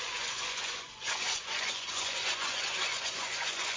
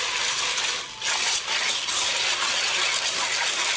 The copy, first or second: first